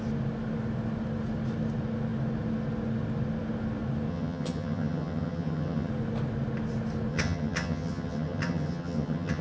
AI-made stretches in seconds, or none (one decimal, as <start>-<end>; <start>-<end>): 4.1-5.9; 7.1-9.4